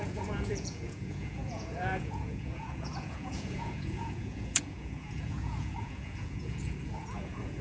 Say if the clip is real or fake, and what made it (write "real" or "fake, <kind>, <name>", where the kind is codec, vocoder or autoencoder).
fake, vocoder, Vocos